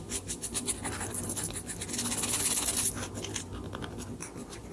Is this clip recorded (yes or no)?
yes